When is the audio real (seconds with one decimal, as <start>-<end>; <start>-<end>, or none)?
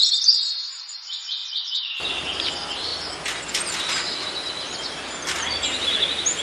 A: 0.8-6.4